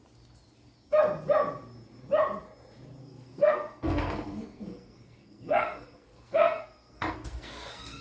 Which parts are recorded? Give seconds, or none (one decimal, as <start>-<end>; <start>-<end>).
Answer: 0.0-3.0